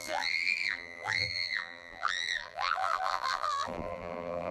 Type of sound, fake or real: fake